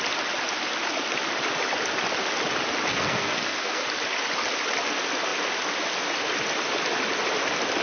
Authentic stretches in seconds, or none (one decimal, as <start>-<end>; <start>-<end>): 0.0-2.9; 3.8-7.8